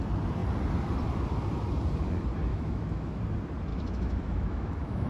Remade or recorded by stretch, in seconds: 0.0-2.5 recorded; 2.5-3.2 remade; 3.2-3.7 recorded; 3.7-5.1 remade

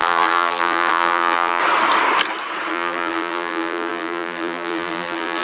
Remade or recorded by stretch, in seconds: 0.0-1.6 remade; 1.6-2.7 recorded; 2.7-5.4 remade

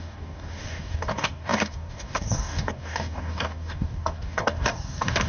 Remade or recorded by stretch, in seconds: 0.0-5.3 remade

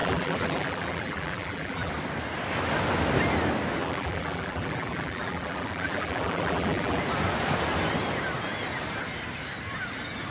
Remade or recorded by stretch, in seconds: 0.0-1.9 remade; 1.9-3.8 recorded; 3.8-7.0 remade; 7.0-10.3 recorded

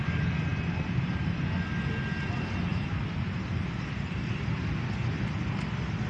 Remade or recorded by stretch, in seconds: 0.0-0.5 recorded; 0.5-1.1 remade; 1.1-2.7 recorded; 2.7-4.4 remade; 4.4-6.1 recorded